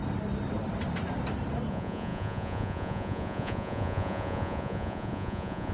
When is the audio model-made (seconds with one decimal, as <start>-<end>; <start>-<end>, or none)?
1.7-5.7